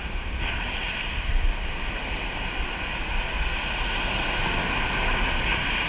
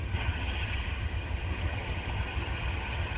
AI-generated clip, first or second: second